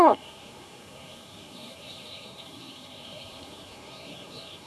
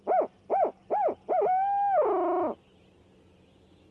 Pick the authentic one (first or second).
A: second